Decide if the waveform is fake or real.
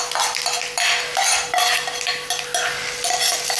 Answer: real